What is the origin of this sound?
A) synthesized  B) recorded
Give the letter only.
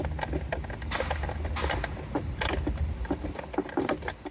B